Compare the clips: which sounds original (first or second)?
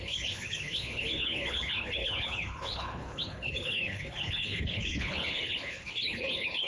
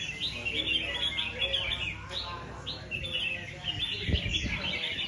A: second